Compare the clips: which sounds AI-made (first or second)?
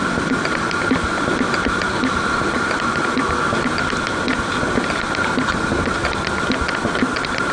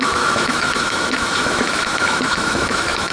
second